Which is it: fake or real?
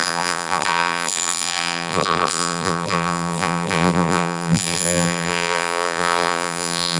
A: fake